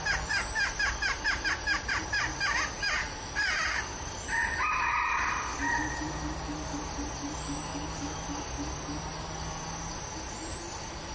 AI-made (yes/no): no